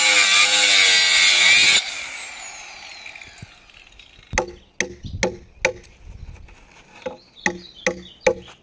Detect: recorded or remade recorded